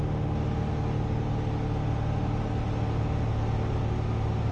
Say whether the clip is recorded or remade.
recorded